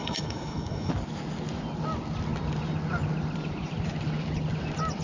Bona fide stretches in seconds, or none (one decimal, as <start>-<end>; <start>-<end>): 0.9-5.0